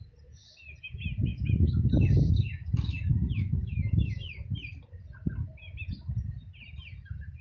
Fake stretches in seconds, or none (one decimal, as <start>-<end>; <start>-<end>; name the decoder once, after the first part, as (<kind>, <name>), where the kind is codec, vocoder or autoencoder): 1.3-4.1 (autoencoder, DAC-VAE)